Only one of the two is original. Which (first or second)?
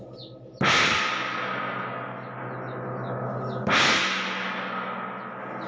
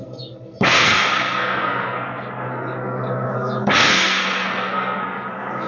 first